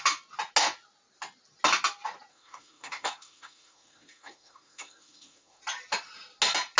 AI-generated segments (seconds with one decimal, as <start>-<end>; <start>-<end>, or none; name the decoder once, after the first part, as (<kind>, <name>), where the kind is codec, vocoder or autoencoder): 2.3-5.6 (codec, SNAC)